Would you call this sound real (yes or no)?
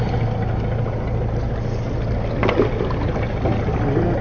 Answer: yes